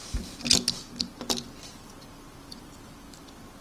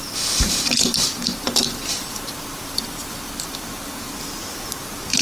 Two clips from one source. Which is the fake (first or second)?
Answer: second